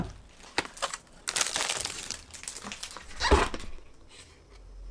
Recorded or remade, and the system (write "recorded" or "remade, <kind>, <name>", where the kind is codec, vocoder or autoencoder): recorded